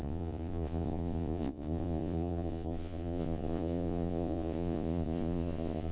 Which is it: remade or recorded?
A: remade